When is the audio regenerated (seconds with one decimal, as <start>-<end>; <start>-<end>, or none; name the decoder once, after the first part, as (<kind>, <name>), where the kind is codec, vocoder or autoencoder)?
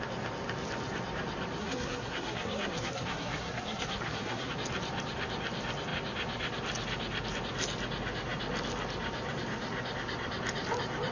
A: 1.6-4.5 (codec, SNAC)